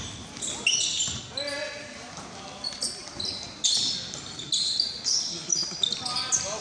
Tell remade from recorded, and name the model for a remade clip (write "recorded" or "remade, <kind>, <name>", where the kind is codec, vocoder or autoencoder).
recorded